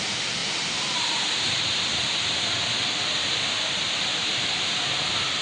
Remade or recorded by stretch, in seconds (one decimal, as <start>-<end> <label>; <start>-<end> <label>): 0.0-0.4 recorded; 0.4-2.2 remade; 2.2-4.1 recorded; 4.1-4.8 remade; 4.8-5.4 recorded